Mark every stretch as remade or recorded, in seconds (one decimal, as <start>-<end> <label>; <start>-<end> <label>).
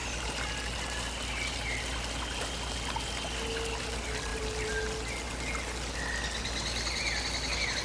0.0-3.9 remade; 3.9-4.3 recorded; 4.3-4.8 remade; 4.8-7.8 recorded